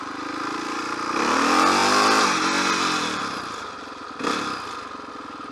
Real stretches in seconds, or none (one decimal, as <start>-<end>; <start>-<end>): 0.0-5.5